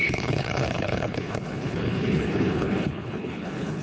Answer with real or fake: fake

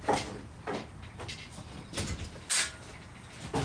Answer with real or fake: real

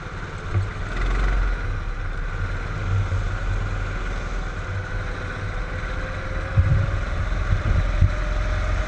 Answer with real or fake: real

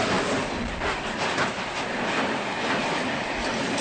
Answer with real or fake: real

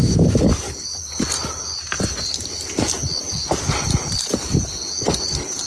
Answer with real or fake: real